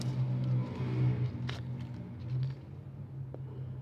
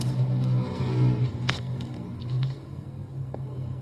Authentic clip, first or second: first